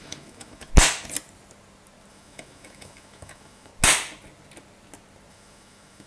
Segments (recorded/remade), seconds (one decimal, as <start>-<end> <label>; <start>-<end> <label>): 0.0-0.7 remade; 0.7-2.1 recorded; 2.1-3.7 remade; 3.7-5.3 recorded; 5.3-6.1 remade